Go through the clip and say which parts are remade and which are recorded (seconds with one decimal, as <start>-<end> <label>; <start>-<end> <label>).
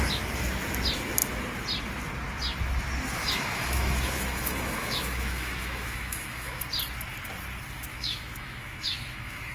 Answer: 0.0-3.2 recorded; 3.2-6.6 remade; 6.6-7.9 recorded; 7.9-9.5 remade